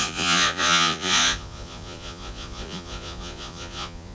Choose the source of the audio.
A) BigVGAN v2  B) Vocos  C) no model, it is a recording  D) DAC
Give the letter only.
B